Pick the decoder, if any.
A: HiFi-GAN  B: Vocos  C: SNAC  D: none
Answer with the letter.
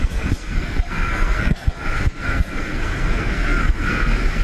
C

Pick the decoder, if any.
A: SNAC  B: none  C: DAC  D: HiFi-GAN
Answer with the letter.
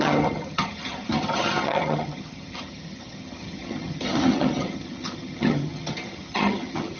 D